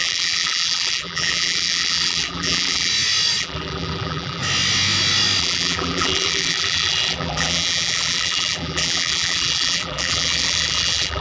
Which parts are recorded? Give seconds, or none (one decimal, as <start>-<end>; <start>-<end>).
2.9-3.4; 4.4-5.4